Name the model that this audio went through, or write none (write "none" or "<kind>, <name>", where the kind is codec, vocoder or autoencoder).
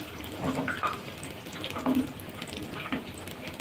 vocoder, BigVGAN v2